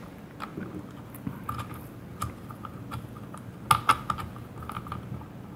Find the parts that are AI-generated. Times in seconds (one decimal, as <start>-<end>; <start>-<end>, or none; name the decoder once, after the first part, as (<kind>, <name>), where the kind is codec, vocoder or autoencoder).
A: none